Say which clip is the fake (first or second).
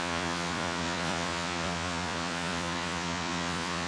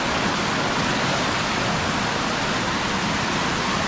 first